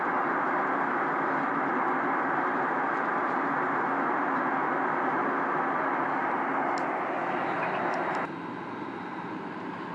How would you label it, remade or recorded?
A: recorded